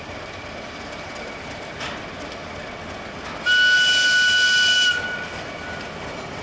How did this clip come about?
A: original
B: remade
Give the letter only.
A